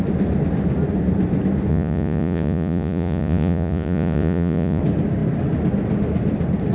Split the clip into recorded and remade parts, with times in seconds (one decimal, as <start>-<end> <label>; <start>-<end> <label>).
0.0-1.7 recorded; 1.7-4.8 remade; 4.8-6.7 recorded